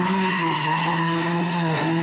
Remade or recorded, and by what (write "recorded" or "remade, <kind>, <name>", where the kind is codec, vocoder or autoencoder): remade, codec, SNAC